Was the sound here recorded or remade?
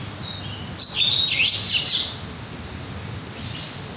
recorded